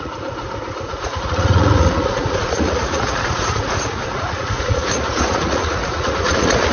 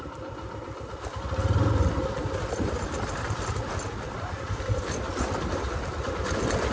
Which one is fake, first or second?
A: first